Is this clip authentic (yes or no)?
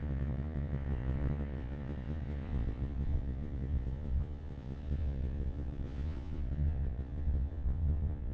no